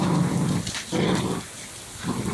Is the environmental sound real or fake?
real